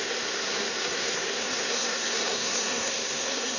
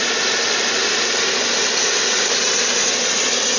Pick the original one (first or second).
second